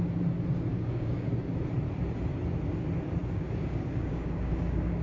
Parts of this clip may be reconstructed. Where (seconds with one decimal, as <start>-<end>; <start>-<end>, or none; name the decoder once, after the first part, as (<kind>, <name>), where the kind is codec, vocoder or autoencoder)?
0.7-1.3 (codec, DAC); 3.2-5.0